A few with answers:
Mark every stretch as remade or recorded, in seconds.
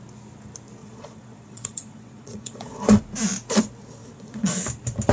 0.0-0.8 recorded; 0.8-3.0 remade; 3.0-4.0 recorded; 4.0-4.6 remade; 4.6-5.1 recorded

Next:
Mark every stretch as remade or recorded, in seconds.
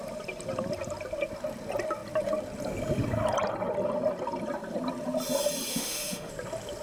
0.0-5.7 recorded; 5.7-6.3 remade; 6.3-6.8 recorded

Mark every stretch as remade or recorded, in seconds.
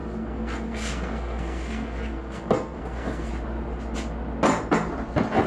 0.0-3.3 remade; 3.3-5.5 recorded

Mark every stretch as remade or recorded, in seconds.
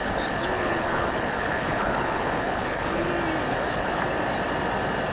0.0-3.1 remade; 3.1-3.5 recorded; 3.5-4.0 remade; 4.0-5.1 recorded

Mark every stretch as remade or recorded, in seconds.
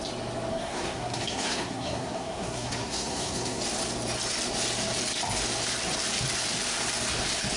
0.0-0.5 recorded; 0.5-3.6 remade; 3.6-7.6 recorded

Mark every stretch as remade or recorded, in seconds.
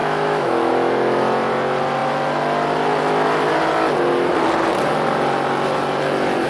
0.0-0.7 remade; 0.7-6.5 recorded